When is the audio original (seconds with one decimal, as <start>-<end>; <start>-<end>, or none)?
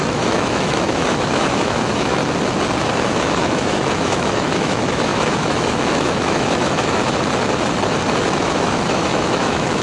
2.2-2.8; 7.0-8.3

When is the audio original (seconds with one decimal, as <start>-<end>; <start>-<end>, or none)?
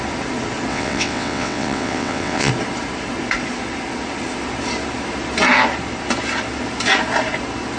0.0-0.7; 2.5-7.8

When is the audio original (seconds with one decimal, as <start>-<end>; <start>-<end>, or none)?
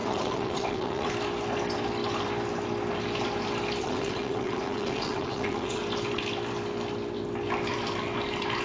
1.1-3.8; 5.8-8.6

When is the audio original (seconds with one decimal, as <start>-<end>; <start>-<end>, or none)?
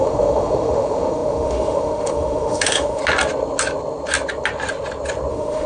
3.0-5.3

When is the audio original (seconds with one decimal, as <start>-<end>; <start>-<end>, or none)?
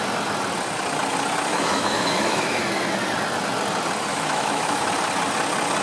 0.0-1.5; 2.6-4.1; 4.9-5.8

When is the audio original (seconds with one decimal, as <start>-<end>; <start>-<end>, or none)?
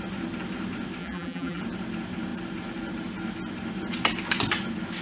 0.0-1.0; 1.6-5.0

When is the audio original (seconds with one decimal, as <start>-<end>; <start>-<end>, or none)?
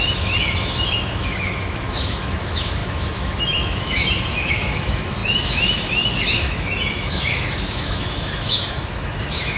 none